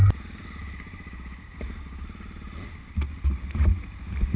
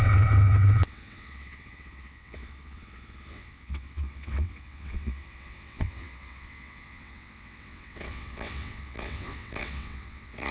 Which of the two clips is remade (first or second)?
second